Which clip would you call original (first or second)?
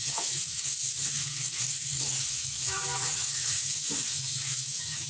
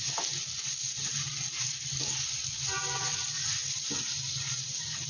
second